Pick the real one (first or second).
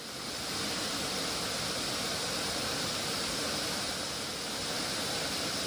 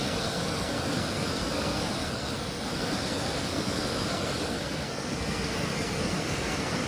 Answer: first